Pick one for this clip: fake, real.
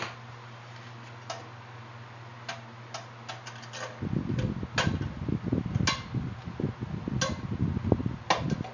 real